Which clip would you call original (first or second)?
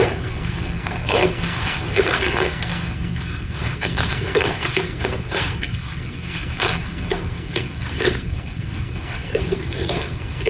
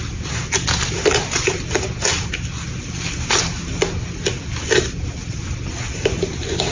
second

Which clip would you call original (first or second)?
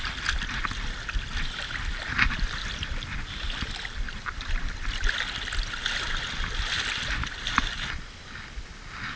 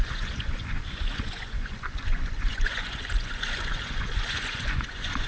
first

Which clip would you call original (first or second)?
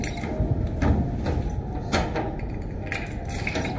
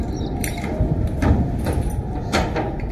first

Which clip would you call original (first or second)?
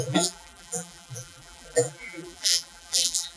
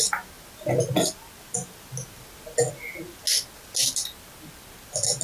second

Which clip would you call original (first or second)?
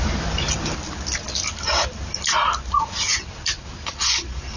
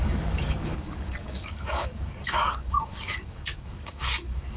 first